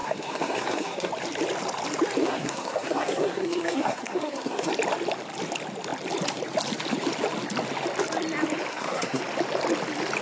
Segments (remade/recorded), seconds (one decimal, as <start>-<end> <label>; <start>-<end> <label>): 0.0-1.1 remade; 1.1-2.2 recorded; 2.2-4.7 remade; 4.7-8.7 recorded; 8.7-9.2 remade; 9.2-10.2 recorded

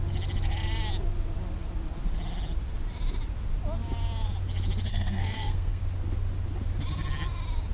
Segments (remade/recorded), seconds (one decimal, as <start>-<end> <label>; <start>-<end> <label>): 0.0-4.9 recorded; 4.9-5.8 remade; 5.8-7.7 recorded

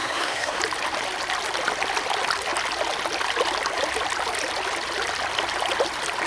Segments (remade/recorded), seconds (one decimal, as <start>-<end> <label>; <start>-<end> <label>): 0.0-0.6 remade; 0.6-6.3 recorded